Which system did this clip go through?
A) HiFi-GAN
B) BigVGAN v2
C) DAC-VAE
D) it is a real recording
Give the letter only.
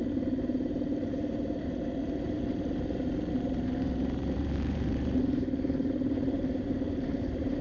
B